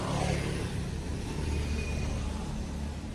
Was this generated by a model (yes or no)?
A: no